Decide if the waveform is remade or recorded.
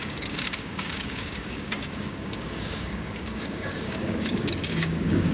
remade